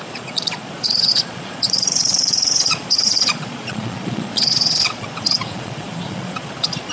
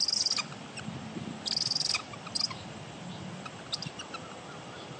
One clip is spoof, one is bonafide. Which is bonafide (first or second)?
second